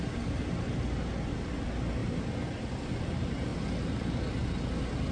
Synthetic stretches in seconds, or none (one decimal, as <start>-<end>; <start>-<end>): none